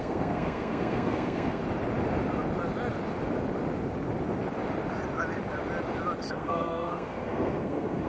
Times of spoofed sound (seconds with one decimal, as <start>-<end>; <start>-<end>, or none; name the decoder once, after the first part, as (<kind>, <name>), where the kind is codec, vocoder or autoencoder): 0.0-1.6 (codec, SNAC); 6.3-8.1